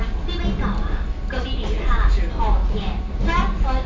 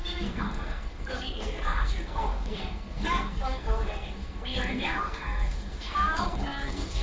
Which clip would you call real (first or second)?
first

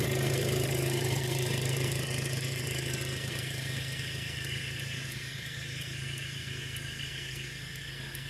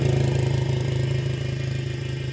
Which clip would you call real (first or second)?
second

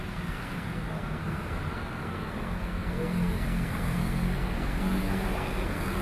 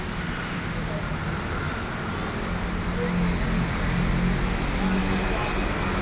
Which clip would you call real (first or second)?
second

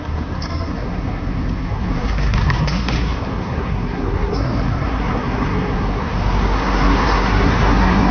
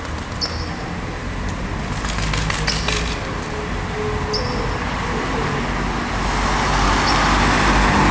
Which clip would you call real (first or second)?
second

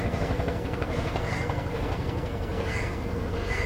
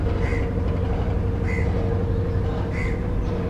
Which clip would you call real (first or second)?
second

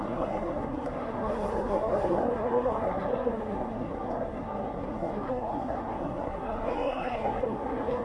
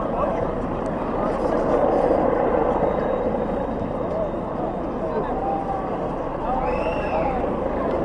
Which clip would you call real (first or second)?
second